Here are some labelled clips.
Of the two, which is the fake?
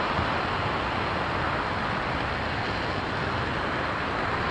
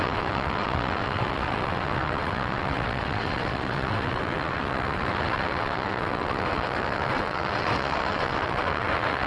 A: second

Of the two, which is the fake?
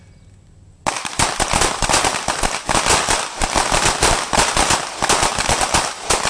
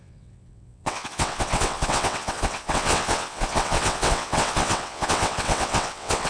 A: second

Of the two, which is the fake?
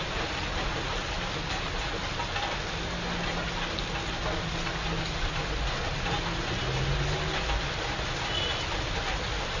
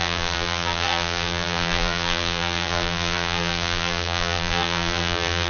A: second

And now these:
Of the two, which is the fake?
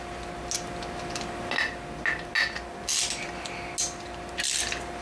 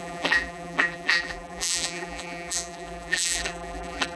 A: second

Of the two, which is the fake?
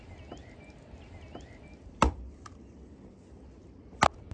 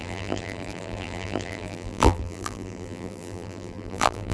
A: second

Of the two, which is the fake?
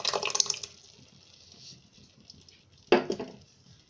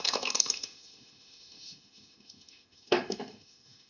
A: second